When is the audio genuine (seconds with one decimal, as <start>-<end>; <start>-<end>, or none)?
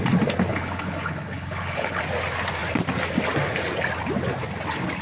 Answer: 0.0-0.5; 2.0-5.0